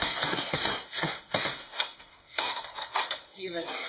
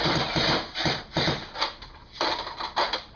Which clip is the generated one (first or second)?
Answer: first